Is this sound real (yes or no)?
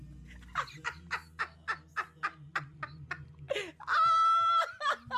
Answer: yes